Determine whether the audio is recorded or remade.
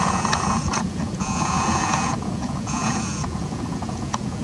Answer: remade